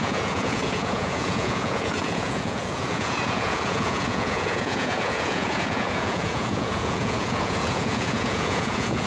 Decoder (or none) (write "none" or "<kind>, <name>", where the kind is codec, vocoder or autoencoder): vocoder, Vocos